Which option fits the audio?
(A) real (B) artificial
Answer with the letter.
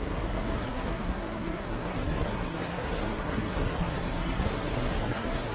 B